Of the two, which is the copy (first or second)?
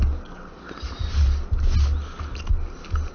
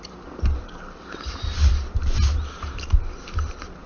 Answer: second